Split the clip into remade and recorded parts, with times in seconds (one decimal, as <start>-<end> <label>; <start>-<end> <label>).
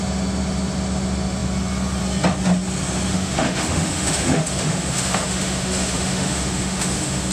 0.0-3.1 recorded; 3.1-7.3 remade